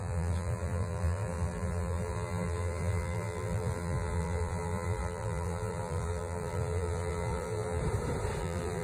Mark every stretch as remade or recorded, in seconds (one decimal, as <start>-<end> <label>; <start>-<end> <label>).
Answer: 0.0-7.8 remade; 7.8-8.4 recorded; 8.4-8.8 remade